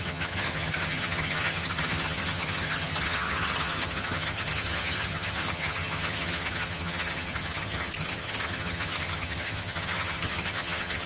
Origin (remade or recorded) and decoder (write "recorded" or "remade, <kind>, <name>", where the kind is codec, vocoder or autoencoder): remade, vocoder, HiFi-GAN